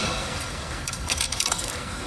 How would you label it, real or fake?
fake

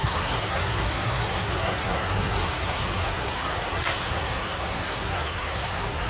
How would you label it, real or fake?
fake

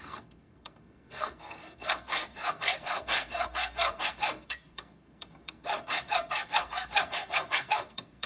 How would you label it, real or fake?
fake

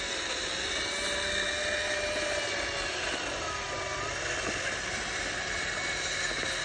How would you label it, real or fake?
real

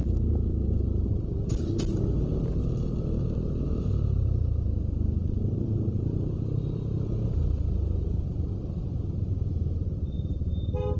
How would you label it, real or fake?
real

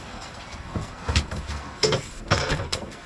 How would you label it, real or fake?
fake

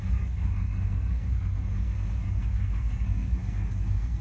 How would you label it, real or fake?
fake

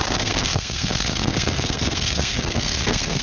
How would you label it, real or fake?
fake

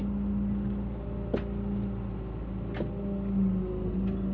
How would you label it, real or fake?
real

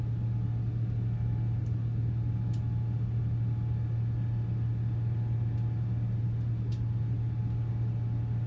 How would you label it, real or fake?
real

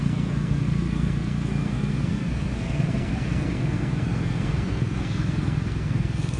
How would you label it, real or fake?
fake